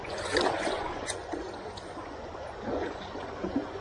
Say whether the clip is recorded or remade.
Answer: remade